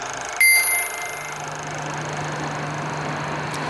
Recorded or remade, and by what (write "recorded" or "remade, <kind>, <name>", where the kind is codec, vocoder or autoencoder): recorded